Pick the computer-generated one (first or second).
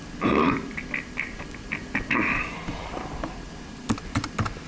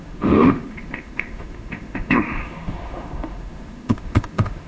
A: second